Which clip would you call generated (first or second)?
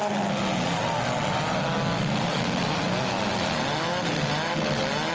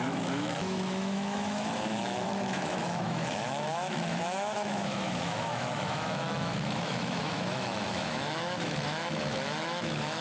second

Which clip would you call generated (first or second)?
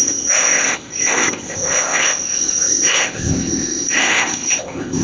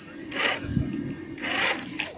first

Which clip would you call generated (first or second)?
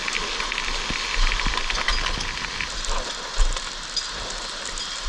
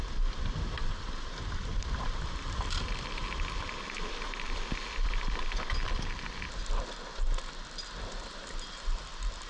second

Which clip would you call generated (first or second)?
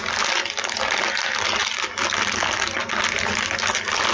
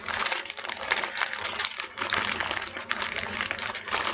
second